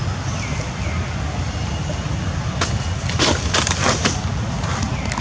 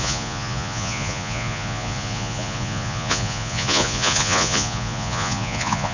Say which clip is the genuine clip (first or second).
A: first